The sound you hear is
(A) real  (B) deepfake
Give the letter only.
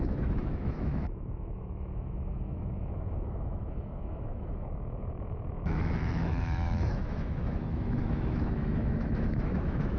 B